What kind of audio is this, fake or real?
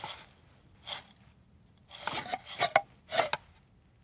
real